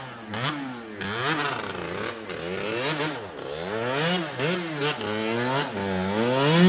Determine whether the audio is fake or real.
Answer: real